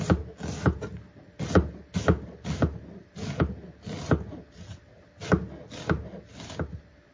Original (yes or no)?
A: yes